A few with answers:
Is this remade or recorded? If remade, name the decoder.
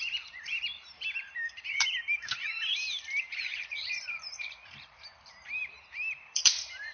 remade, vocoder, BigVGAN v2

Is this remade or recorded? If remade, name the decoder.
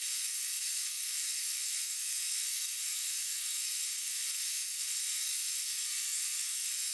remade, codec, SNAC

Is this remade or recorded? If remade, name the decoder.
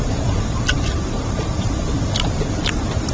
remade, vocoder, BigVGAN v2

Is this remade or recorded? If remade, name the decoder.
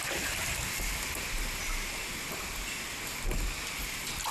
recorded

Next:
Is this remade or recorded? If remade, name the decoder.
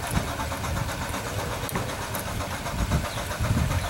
recorded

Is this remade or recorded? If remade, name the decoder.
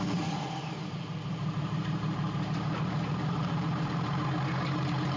remade, vocoder, BigVGAN v2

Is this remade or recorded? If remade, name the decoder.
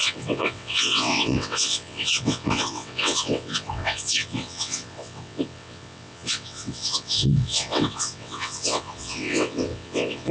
remade, vocoder, WaveNeXt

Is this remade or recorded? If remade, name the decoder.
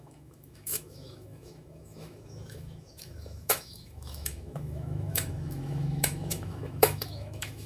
remade, autoencoder, DAC-VAE